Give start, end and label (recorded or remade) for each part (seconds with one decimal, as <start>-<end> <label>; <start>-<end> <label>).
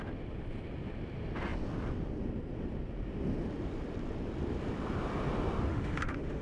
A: 0.0-5.7 recorded; 5.7-6.4 remade